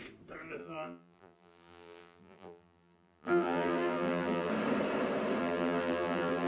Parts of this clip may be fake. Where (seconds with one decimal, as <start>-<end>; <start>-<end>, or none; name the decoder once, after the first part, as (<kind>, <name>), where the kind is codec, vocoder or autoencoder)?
0.6-4.5 (vocoder, BigVGAN v2); 5.4-6.5